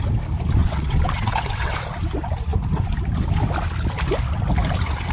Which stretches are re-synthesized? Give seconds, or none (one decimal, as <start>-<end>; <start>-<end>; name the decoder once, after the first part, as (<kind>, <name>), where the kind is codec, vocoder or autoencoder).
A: 0.6-1.7 (vocoder, WaveNeXt)